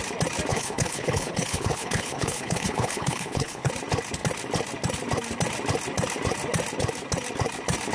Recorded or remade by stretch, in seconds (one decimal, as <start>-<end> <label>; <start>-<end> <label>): 0.0-0.5 recorded; 0.5-3.7 remade; 3.7-7.9 recorded